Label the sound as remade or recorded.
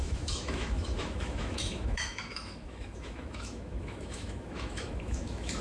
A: remade